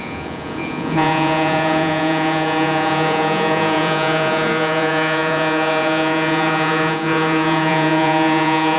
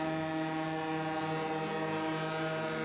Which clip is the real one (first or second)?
second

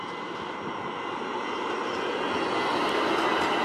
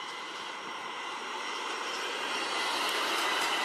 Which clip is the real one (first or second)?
first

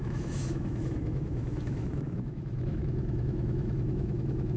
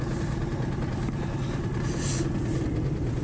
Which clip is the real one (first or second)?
second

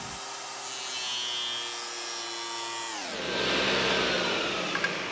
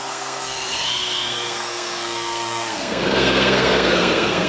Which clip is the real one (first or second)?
first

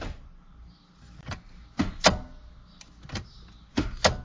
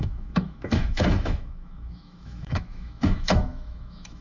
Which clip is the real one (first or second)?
first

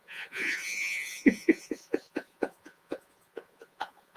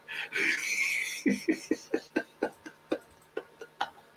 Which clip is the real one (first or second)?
second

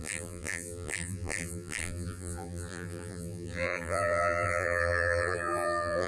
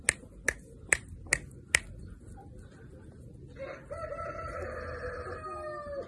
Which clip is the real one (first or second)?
second